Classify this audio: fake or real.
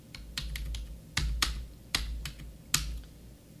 real